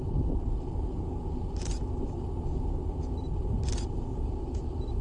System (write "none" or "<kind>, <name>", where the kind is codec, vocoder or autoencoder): none